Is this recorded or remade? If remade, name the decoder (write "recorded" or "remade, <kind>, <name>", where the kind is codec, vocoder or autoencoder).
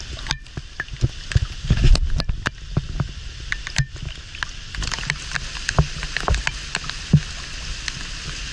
recorded